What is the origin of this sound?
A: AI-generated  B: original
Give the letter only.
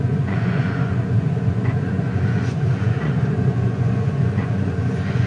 A